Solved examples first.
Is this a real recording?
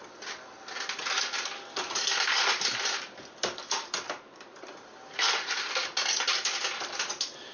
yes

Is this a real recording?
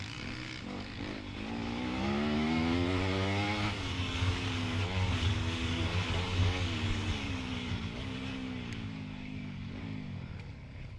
no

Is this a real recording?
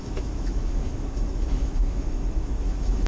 no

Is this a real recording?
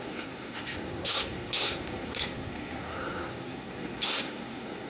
no